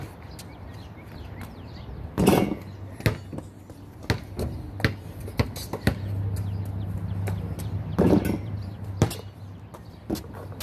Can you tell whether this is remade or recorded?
recorded